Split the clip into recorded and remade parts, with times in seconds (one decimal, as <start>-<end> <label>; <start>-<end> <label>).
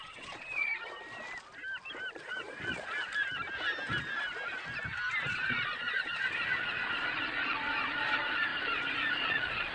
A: 0.0-0.7 remade; 0.7-2.2 recorded; 2.2-3.1 remade; 3.1-5.3 recorded; 5.3-9.7 remade